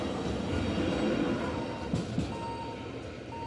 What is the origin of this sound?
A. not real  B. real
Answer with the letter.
B